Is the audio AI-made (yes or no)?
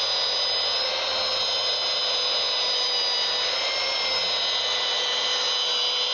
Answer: no